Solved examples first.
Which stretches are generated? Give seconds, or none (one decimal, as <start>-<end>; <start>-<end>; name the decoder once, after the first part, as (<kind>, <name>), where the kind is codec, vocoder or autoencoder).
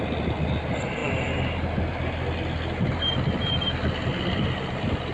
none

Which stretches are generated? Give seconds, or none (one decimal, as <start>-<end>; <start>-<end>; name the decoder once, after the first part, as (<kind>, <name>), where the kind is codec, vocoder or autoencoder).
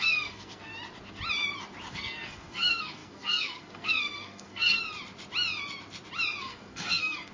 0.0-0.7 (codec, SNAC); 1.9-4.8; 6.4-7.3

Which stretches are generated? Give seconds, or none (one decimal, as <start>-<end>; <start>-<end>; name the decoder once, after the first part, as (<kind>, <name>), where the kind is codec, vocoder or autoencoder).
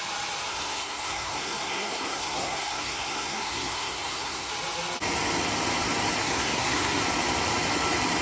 0.5-4.5 (codec, SNAC); 6.2-7.0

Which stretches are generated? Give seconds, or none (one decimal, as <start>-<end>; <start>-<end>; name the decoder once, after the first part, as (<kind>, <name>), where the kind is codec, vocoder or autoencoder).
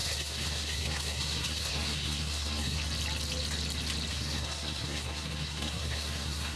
0.0-2.8 (codec, SNAC); 4.1-6.6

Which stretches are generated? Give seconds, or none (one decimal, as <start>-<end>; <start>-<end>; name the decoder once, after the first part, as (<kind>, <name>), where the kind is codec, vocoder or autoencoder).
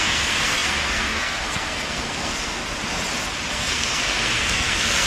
0.0-2.6 (codec, SNAC); 3.5-5.1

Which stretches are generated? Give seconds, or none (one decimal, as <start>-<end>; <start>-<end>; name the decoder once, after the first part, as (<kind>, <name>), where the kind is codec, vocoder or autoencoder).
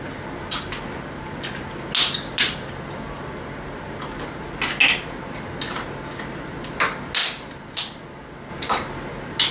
none